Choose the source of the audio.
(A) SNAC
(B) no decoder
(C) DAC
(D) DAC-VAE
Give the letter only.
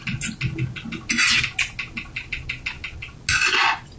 B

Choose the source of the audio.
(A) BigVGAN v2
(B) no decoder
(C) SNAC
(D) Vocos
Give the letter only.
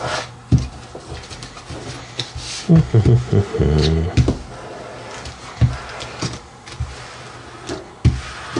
B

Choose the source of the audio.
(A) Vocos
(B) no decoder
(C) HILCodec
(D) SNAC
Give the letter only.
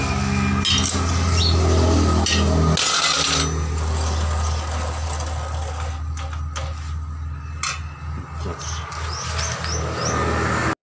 B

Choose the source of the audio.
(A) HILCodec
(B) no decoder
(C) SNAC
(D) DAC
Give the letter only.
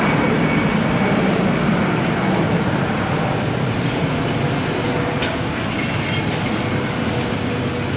B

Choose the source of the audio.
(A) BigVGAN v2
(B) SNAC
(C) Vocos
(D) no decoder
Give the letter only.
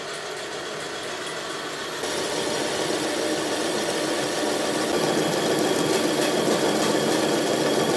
D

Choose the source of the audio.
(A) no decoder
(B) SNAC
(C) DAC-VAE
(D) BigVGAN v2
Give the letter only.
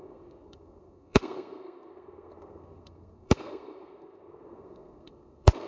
B